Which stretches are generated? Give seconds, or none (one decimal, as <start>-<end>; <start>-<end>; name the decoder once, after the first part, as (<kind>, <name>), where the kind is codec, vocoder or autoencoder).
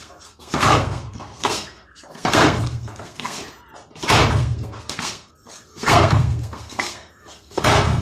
0.0-3.4 (codec, SNAC); 4.3-8.0